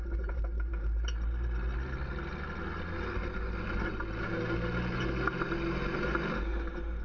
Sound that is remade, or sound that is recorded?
recorded